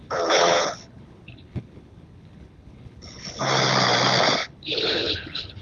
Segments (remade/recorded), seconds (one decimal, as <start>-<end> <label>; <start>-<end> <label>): 0.0-3.4 remade; 3.4-4.4 recorded; 4.4-5.6 remade